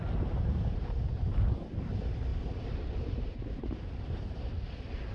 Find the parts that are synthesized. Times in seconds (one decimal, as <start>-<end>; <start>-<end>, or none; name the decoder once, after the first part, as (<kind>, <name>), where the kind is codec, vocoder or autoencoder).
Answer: none